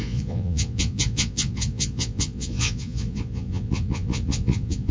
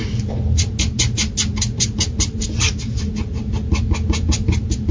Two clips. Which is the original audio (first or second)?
second